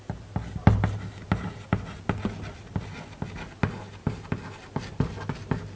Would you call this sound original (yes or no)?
yes